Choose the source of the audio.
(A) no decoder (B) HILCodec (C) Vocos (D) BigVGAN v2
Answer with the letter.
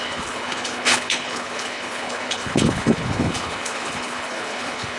B